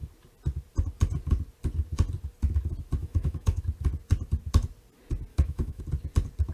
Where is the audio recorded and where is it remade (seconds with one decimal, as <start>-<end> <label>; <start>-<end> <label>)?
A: 0.0-3.0 recorded; 3.0-3.6 remade; 3.6-5.3 recorded; 5.3-5.8 remade; 5.8-6.5 recorded